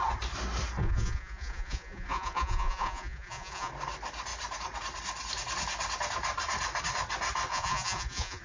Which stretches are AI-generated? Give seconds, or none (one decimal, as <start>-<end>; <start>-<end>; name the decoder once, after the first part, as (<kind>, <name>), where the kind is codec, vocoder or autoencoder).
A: 0.8-3.7 (vocoder, Vocos); 7.5-8.4